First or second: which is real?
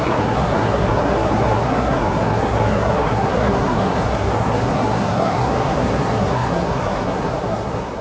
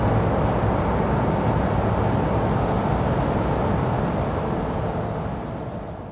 second